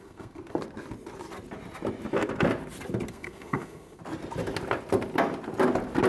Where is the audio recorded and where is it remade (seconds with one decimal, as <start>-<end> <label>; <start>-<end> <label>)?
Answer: 0.0-0.4 remade; 0.4-3.1 recorded; 3.1-4.0 remade; 4.0-6.1 recorded